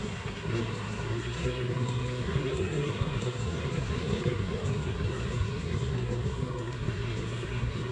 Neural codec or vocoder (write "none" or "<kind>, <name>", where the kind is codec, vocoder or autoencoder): codec, SNAC